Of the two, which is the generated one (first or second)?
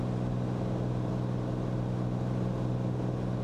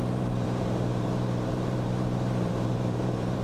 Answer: second